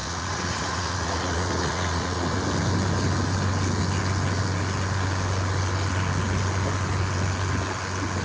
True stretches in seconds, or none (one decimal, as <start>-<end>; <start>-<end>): 2.4-8.2